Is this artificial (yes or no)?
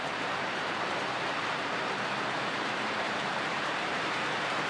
yes